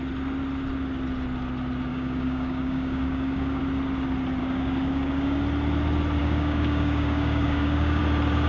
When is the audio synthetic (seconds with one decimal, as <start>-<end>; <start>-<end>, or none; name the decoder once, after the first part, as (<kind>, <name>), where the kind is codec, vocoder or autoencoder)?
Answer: 1.9-3.6 (codec, DAC); 4.4-5.4; 6.2-8.0

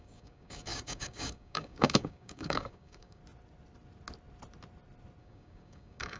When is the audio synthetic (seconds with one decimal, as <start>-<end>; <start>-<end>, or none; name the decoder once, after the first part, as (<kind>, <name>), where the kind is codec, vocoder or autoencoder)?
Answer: 0.0-3.2 (codec, DAC); 5.2-6.2

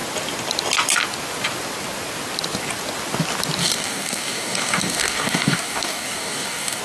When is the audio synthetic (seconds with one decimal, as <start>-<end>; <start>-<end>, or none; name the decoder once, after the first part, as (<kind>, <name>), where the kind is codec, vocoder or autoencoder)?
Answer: 3.6-6.8 (codec, DAC)